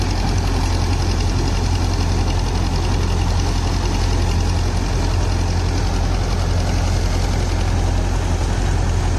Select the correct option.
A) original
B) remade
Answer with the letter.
A